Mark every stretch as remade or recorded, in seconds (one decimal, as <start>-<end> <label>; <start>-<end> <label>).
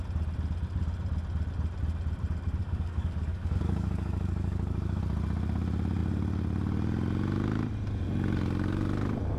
0.0-2.6 recorded; 2.6-5.0 remade; 5.0-9.4 recorded